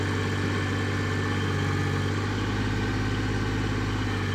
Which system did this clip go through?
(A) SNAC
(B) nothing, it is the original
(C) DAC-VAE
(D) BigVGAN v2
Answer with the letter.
B